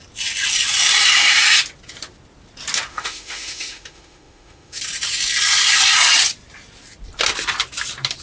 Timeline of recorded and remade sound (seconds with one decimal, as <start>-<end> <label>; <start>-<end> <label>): 0.0-2.9 recorded; 2.9-4.8 remade; 4.8-8.2 recorded